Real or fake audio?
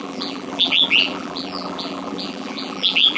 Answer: fake